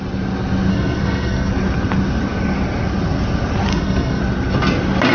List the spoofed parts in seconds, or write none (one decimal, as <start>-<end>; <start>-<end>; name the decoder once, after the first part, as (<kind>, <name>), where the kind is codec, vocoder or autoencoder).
0.7-1.5 (codec, SNAC); 3.7-4.2